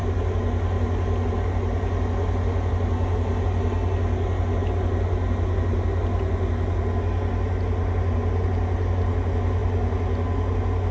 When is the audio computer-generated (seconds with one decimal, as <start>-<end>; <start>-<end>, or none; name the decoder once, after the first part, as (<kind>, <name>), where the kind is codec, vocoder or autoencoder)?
none